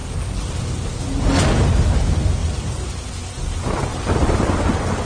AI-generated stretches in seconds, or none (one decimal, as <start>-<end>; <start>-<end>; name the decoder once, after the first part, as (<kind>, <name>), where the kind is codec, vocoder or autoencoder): 3.9-4.5 (vocoder, BigVGAN v2)